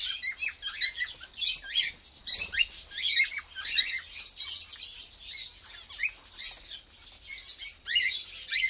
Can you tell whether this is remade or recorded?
recorded